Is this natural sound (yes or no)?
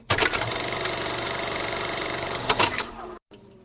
no